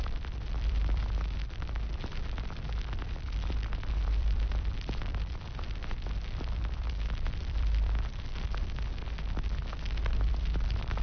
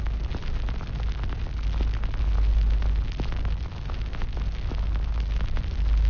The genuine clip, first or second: second